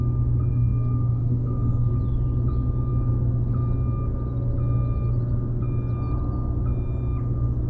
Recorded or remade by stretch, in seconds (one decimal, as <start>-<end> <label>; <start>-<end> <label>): 0.0-0.5 recorded; 0.5-1.9 remade; 1.9-7.7 recorded